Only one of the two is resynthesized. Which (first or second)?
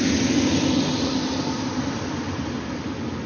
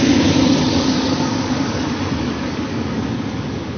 second